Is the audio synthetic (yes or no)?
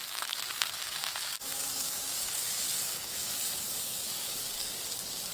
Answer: yes